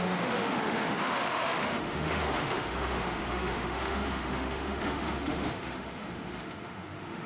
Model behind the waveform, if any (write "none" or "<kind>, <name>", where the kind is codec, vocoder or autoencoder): autoencoder, DAC-VAE